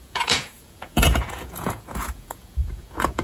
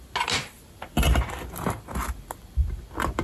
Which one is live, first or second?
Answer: second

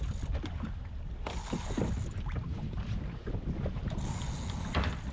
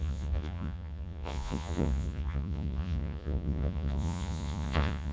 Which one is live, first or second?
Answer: first